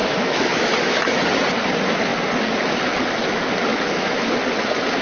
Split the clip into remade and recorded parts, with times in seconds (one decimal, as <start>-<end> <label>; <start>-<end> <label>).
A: 0.0-1.2 remade; 1.2-3.7 recorded; 3.7-4.4 remade; 4.4-5.0 recorded